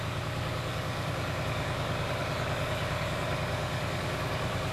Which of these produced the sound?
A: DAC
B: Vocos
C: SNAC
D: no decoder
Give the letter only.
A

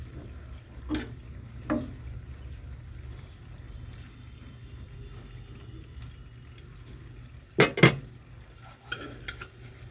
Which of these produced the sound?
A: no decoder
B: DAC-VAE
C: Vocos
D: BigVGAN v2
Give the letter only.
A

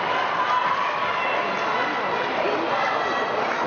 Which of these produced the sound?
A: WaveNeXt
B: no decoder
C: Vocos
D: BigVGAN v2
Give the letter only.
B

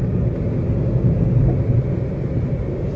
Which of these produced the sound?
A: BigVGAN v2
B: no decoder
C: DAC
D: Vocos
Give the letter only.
B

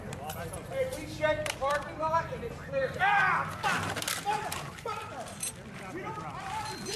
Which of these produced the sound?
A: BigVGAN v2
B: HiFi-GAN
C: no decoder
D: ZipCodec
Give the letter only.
A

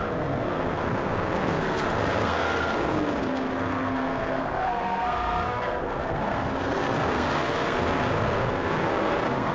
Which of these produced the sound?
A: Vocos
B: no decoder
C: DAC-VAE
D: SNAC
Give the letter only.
D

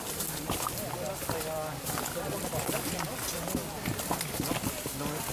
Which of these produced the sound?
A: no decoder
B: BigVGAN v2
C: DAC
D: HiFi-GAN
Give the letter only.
A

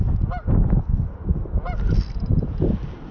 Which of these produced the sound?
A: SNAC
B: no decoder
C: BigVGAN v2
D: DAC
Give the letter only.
B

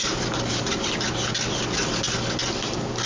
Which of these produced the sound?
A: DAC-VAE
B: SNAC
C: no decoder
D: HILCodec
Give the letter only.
C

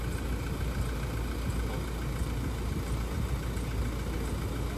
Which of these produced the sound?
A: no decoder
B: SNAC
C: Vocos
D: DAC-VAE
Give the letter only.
A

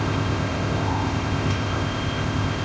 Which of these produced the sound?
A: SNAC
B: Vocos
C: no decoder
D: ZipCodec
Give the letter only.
D